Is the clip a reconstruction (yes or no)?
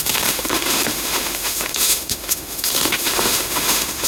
yes